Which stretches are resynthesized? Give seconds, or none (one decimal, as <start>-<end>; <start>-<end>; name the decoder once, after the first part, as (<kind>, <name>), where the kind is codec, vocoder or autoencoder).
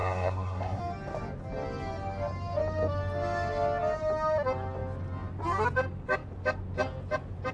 0.0-0.8 (codec, SNAC)